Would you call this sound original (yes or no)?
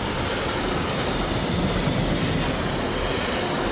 yes